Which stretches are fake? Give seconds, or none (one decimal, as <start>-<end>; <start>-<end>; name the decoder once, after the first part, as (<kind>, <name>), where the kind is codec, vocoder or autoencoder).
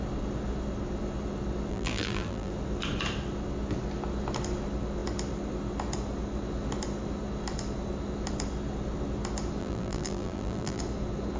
1.7-2.5 (vocoder, BigVGAN v2); 9.6-10.8